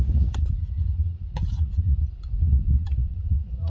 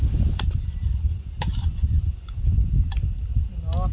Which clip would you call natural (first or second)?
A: second